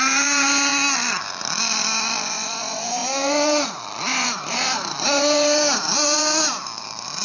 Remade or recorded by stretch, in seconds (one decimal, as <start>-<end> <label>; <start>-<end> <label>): 0.0-0.7 remade; 0.7-1.2 recorded; 1.2-7.2 remade